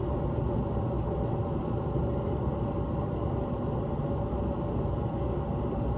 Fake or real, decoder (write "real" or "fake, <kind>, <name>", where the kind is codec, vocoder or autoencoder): real